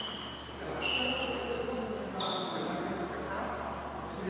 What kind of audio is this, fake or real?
real